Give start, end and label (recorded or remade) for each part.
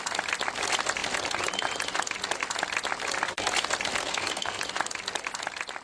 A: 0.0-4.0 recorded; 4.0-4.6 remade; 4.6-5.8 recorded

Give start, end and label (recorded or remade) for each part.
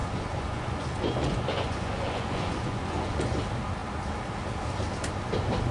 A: 0.0-3.4 remade; 3.4-5.7 recorded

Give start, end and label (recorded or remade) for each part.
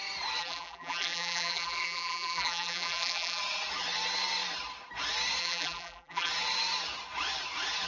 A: 0.0-0.4 recorded; 0.4-3.4 remade; 3.4-5.4 recorded; 5.4-6.3 remade; 6.3-7.9 recorded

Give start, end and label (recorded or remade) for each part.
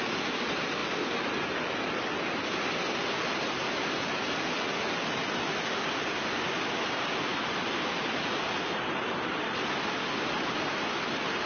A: 0.0-11.5 recorded